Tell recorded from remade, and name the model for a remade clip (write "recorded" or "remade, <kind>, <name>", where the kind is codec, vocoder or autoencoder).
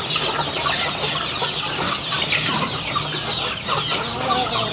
recorded